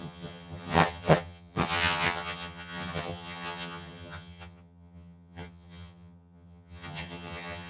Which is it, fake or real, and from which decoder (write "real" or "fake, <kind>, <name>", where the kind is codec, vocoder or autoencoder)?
fake, vocoder, HiFi-GAN